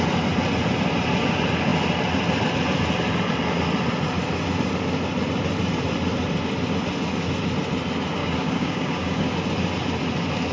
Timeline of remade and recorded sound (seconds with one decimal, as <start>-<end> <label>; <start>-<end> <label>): 0.0-8.2 recorded; 8.2-9.3 remade; 9.3-10.5 recorded